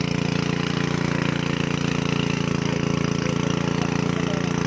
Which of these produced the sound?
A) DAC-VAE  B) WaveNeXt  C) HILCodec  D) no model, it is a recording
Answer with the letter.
D